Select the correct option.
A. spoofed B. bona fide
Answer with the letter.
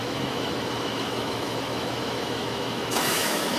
A